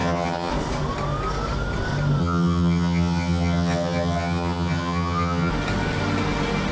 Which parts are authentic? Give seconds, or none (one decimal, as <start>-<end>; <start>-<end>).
0.5-2.2; 5.5-6.7